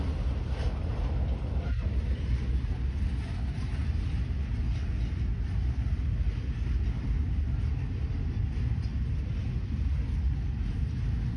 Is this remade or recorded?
recorded